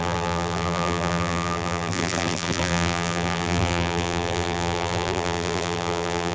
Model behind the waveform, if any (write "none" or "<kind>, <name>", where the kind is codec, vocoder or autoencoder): vocoder, BigVGAN v2